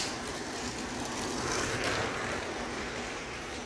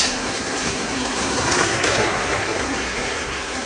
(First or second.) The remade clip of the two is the second